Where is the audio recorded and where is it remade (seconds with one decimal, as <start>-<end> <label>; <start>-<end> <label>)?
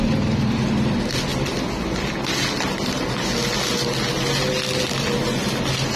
0.0-6.0 recorded